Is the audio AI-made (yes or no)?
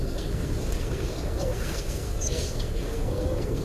yes